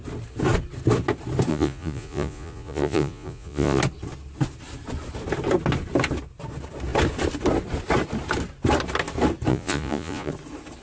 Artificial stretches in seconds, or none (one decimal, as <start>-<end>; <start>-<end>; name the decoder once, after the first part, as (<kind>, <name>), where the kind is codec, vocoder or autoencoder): 1.5-3.8 (vocoder, Vocos); 9.5-10.3